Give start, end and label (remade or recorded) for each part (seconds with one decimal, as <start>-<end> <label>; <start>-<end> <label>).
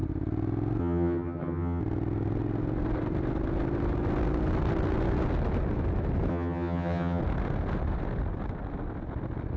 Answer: 0.0-0.8 recorded; 0.8-1.8 remade; 1.8-6.3 recorded; 6.3-7.2 remade; 7.2-9.6 recorded